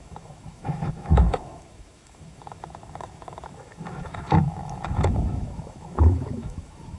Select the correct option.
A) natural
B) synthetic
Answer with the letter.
B